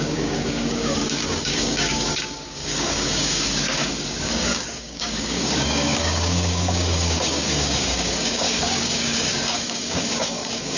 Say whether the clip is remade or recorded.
remade